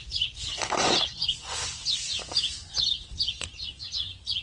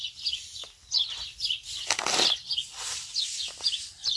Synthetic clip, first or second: first